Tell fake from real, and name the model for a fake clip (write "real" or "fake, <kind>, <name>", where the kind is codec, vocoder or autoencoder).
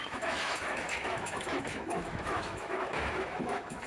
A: fake, autoencoder, DAC-VAE